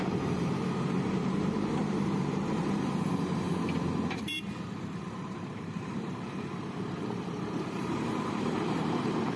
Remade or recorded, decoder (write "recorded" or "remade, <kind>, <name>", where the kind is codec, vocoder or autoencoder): remade, vocoder, BigVGAN v2